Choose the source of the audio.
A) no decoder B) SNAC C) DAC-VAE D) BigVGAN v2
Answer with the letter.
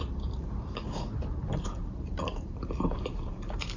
D